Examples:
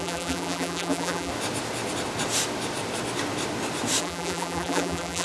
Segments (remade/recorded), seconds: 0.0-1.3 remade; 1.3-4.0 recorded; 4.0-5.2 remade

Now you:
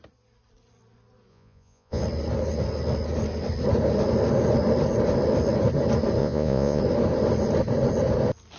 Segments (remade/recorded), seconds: 0.0-1.3 recorded; 1.3-2.0 remade; 2.0-6.2 recorded; 6.2-6.8 remade; 6.8-8.6 recorded